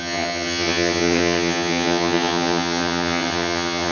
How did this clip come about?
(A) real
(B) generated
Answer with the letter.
B